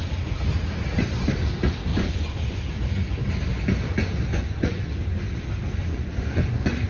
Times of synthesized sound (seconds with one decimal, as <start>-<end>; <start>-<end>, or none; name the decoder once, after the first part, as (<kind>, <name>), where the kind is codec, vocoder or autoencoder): 1.9-2.6 (vocoder, Vocos); 4.3-4.9; 5.8-6.9